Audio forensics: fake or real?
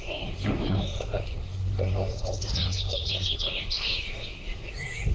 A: fake